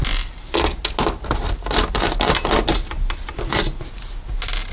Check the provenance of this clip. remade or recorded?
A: recorded